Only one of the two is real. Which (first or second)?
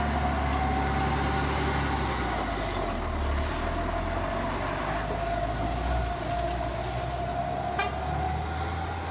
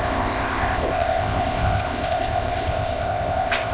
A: first